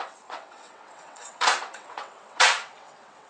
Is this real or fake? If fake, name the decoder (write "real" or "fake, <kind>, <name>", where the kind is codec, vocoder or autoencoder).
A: fake, vocoder, WaveNeXt